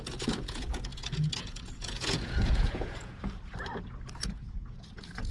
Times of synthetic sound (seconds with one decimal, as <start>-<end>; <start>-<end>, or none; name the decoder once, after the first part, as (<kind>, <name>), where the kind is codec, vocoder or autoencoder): 0.0-3.2 (vocoder, Vocos); 4.1-5.3